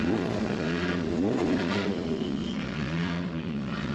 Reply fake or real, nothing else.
fake